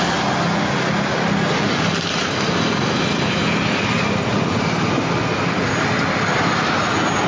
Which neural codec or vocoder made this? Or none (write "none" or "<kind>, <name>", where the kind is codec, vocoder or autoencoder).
none